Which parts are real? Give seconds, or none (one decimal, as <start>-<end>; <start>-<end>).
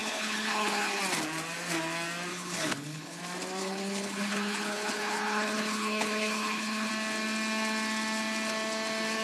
1.0-2.3; 3.2-3.6; 6.9-9.2